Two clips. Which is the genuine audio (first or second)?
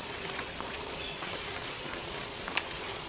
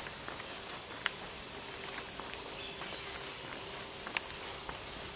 second